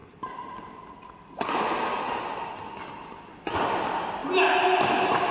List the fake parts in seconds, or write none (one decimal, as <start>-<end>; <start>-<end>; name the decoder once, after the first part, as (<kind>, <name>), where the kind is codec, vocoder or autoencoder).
none